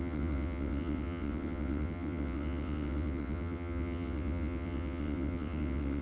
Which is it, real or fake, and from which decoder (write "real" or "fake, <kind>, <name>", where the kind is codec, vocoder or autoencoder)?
fake, vocoder, WaveNeXt